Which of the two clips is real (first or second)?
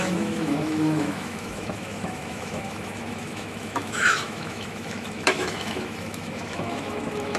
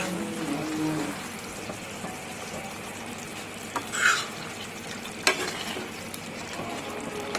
second